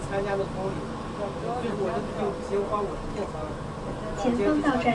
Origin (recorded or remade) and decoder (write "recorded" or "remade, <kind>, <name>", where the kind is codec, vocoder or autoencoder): recorded